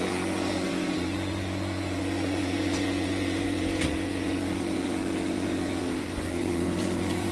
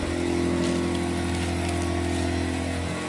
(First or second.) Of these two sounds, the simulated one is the first